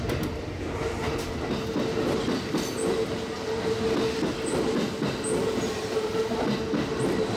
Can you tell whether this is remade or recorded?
recorded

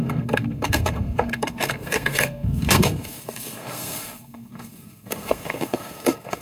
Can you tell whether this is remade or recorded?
remade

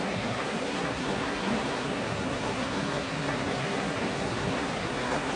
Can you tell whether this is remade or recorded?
remade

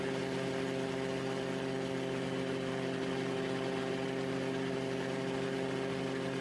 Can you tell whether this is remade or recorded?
recorded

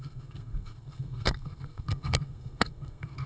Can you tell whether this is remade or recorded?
remade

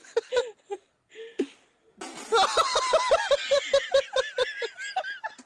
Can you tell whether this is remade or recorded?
recorded